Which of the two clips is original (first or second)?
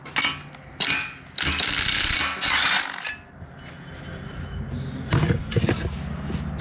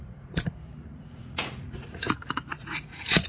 first